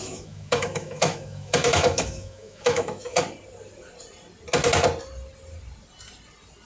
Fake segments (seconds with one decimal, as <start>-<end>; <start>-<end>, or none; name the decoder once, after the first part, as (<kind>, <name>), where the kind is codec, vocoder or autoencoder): 0.0-3.2 (autoencoder, DAC-VAE)